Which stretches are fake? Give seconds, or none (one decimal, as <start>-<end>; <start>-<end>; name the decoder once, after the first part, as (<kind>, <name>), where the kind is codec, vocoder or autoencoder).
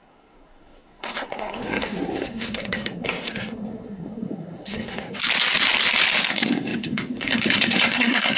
0.0-5.2 (codec, SNAC); 6.3-8.4